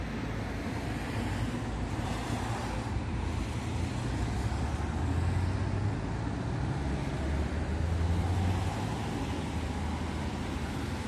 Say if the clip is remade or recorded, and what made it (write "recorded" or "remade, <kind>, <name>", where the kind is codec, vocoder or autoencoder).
recorded